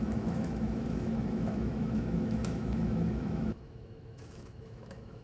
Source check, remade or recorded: remade